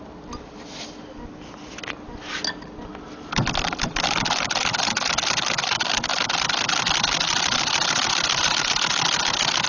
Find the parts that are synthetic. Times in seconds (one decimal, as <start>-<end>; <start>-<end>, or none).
none